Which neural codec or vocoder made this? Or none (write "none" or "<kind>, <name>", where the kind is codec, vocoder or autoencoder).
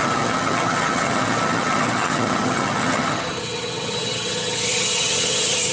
vocoder, HiFi-GAN